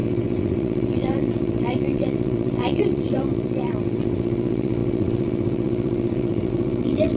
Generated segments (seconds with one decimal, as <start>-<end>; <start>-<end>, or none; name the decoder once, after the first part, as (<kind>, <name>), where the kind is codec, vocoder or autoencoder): 0.0-7.2 (vocoder, WaveNeXt)